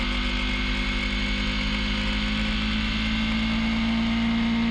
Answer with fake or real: real